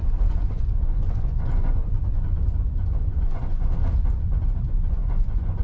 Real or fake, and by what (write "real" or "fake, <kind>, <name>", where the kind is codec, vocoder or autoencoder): fake, vocoder, Vocos